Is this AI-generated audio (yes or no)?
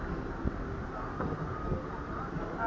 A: no